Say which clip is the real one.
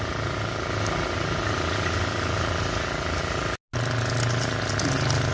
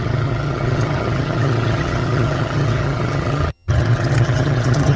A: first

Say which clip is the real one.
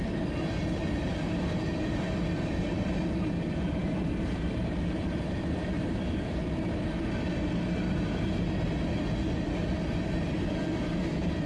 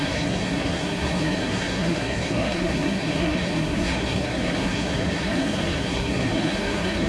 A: first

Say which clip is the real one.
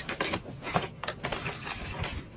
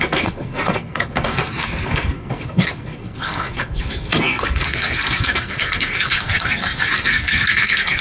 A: first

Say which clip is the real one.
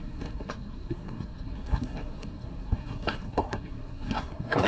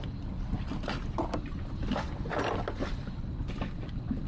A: second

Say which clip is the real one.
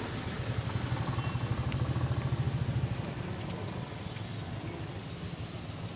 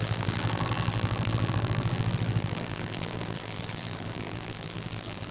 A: first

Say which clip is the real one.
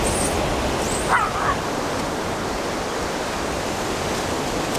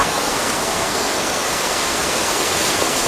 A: first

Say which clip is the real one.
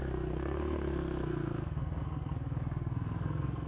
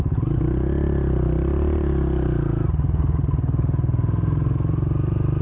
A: second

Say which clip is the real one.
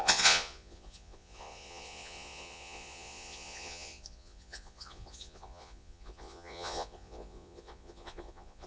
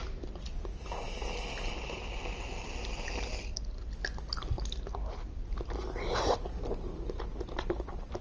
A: second